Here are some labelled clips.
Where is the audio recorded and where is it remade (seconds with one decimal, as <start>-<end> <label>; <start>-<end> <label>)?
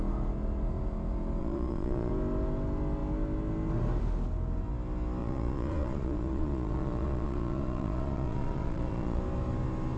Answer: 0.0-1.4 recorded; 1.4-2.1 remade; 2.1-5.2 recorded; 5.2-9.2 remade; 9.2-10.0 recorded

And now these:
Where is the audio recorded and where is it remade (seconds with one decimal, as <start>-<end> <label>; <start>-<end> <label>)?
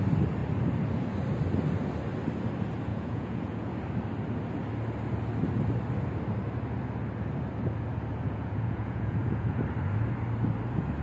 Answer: 0.0-2.9 recorded; 2.9-3.7 remade; 3.7-8.1 recorded; 8.1-9.6 remade; 9.6-11.0 recorded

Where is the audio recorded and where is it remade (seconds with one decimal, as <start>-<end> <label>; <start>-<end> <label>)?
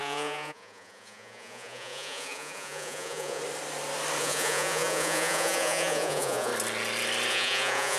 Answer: 0.0-3.4 remade; 3.4-4.2 recorded; 4.2-6.5 remade; 6.5-7.3 recorded; 7.3-8.0 remade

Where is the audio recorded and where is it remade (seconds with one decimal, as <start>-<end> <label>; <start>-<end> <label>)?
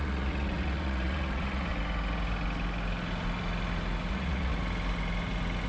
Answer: 0.0-1.7 remade; 1.7-4.1 recorded; 4.1-4.5 remade; 4.5-5.7 recorded